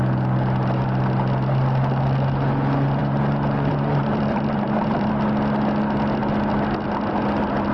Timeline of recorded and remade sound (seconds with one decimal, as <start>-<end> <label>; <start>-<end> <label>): 0.0-3.0 recorded; 3.0-5.1 remade; 5.1-7.7 recorded